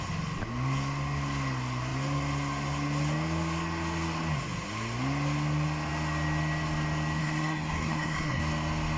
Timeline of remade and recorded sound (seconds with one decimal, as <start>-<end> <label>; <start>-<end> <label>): 0.0-7.2 recorded; 7.2-8.4 remade; 8.4-9.0 recorded